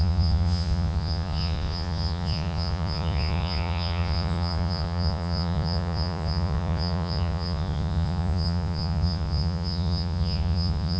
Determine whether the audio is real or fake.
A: fake